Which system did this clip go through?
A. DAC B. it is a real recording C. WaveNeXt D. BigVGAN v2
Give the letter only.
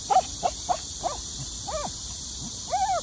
D